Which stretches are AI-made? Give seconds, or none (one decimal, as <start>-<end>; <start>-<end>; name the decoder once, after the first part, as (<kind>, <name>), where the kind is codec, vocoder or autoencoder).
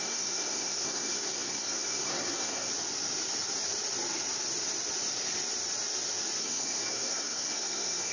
0.0-2.7 (codec, SNAC); 6.4-8.1